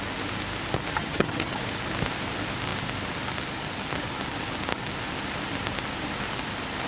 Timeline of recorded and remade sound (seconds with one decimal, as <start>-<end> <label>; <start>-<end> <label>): 0.0-1.0 recorded; 1.0-1.6 remade; 1.6-6.9 recorded